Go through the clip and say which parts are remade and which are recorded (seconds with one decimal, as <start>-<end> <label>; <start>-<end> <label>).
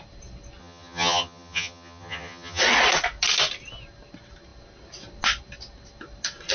0.0-0.6 recorded; 0.6-2.6 remade; 2.6-6.5 recorded